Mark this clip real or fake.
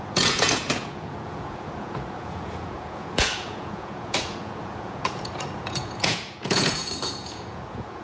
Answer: fake